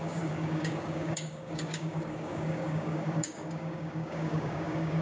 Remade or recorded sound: remade